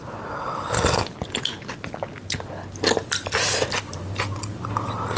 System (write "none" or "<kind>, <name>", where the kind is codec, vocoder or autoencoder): none